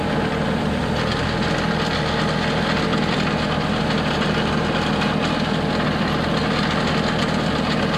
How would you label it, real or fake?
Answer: real